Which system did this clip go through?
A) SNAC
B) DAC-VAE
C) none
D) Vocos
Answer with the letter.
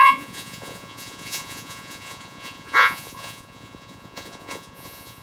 D